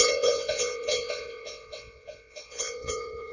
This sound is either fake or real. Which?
fake